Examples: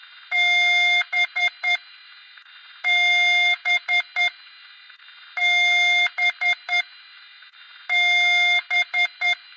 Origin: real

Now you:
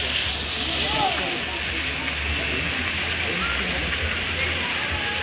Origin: real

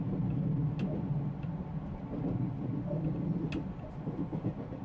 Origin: real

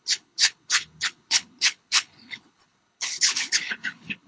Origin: fake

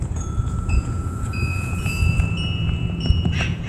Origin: fake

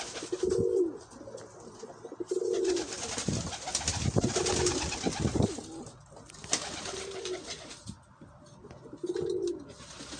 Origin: real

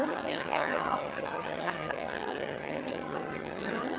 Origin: fake